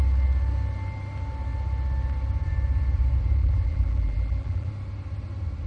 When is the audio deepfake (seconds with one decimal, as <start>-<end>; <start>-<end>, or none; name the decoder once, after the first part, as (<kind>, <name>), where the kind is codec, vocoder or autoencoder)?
3.4-4.7 (vocoder, BigVGAN v2)